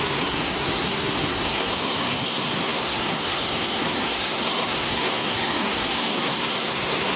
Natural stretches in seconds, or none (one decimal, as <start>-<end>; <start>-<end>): none